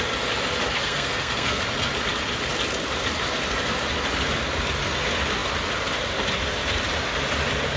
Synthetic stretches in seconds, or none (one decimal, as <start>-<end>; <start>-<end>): 0.8-1.6